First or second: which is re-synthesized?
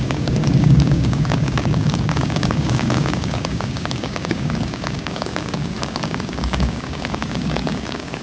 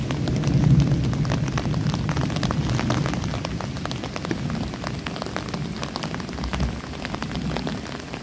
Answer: first